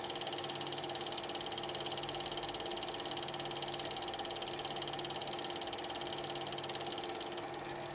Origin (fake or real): real